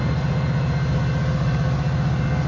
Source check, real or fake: real